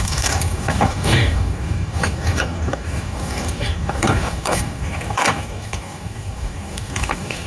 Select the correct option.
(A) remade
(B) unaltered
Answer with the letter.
A